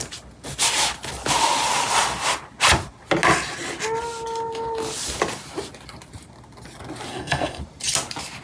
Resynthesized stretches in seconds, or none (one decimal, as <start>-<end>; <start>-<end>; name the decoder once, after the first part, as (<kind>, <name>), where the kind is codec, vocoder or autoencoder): 7.1-7.6 (codec, SNAC)